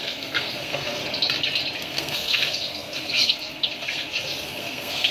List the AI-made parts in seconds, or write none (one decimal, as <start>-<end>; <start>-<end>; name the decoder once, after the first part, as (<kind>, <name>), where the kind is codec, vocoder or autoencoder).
0.0-1.0 (codec, SNAC); 1.8-5.1